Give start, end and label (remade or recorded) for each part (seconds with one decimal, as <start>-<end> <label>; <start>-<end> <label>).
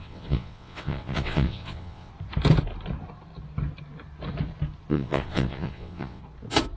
0.0-2.1 remade; 2.1-4.9 recorded; 4.9-6.2 remade; 6.2-6.8 recorded